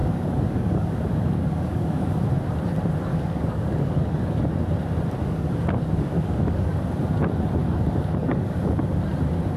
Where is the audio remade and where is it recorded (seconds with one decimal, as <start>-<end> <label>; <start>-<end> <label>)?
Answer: 0.0-2.2 remade; 2.2-3.1 recorded; 3.1-4.4 remade; 4.4-5.2 recorded; 5.2-6.8 remade; 6.8-7.6 recorded; 7.6-8.6 remade; 8.6-9.6 recorded

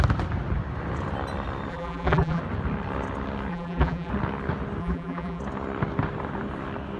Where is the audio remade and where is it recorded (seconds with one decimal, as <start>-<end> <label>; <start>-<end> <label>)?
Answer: 0.0-1.7 recorded; 1.7-2.4 remade; 2.4-3.5 recorded; 3.5-4.1 remade; 4.1-4.8 recorded; 4.8-5.4 remade; 5.4-7.0 recorded

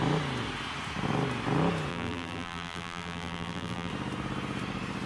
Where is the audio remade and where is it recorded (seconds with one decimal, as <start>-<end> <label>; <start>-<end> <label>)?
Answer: 0.0-1.9 recorded; 1.9-3.9 remade; 3.9-5.1 recorded